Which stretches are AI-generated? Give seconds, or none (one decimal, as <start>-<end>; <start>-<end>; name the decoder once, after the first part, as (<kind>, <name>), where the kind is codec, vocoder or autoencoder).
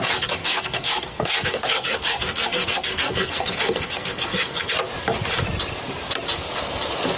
0.4-4.7 (codec, SNAC)